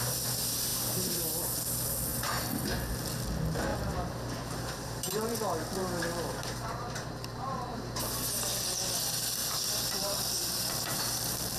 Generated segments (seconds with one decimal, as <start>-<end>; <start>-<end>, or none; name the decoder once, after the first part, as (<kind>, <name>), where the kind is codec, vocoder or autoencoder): 3.7-8.0 (vocoder, BigVGAN v2); 9.4-11.6